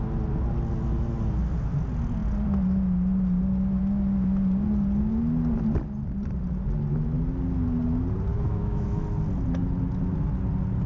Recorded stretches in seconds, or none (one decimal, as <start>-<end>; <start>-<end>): 0.0-8.3; 9.0-10.9